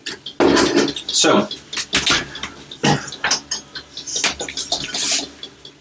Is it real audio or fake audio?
real